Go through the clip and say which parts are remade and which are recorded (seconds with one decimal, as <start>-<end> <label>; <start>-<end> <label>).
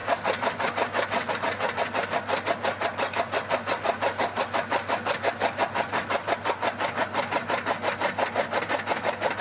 0.0-1.3 remade; 1.3-9.4 recorded